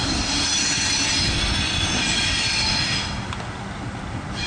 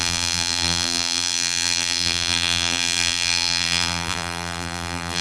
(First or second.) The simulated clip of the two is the second